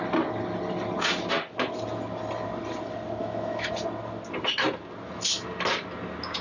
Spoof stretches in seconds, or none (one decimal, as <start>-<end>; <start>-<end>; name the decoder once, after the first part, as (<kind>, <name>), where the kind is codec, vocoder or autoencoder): 3.2-3.7 (autoencoder, DAC-VAE)